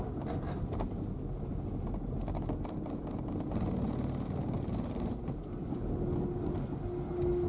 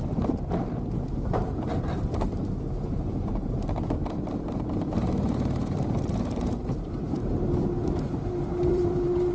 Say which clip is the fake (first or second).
second